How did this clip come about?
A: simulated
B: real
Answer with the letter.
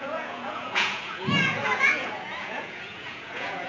A